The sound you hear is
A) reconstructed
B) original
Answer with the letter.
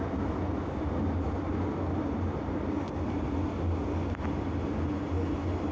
B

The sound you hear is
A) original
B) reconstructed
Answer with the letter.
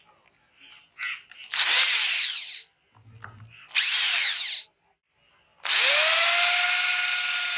A